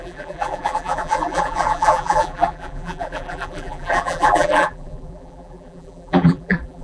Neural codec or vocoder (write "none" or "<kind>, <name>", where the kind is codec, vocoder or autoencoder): vocoder, BigVGAN v2